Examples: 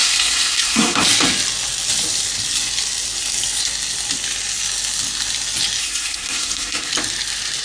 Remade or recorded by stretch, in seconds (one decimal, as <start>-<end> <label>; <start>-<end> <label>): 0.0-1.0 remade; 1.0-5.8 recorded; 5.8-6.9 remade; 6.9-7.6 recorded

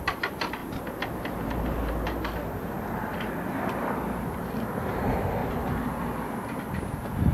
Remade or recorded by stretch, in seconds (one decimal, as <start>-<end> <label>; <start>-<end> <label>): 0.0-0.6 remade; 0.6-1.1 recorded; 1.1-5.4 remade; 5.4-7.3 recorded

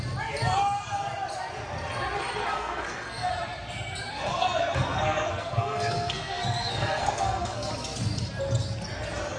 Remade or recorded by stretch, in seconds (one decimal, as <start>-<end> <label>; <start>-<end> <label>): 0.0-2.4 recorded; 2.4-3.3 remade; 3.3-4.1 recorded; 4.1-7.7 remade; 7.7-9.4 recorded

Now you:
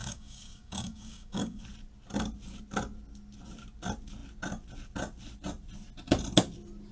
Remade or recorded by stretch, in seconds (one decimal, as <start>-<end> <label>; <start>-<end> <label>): 0.0-1.6 remade; 1.6-6.9 recorded

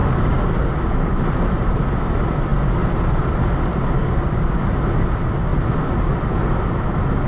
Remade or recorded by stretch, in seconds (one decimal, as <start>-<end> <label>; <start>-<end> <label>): 0.0-1.2 remade; 1.2-4.0 recorded; 4.0-4.6 remade; 4.6-7.3 recorded

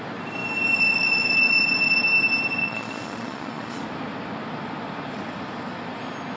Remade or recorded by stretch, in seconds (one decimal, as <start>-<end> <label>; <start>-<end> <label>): 0.0-2.6 recorded; 2.6-3.8 remade; 3.8-6.4 recorded

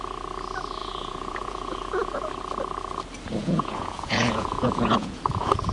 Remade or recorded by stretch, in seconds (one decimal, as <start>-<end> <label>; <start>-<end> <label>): 0.0-0.8 recorded; 0.8-2.3 remade; 2.3-3.4 recorded; 3.4-5.2 remade; 5.2-5.7 recorded